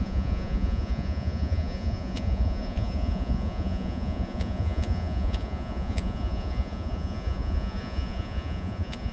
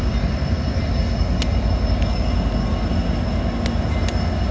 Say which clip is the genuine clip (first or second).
second